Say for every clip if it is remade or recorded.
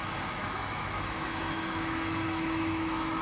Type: remade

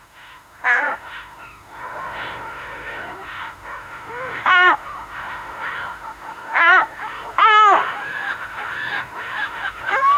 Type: remade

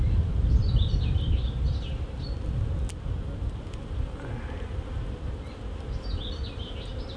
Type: recorded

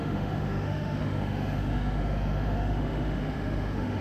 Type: remade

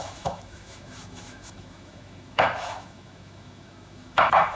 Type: remade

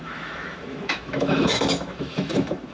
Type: remade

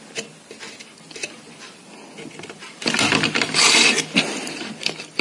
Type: recorded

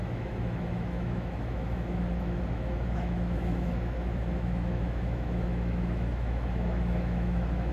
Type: remade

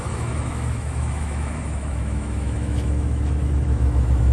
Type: remade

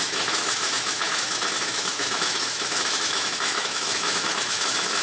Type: remade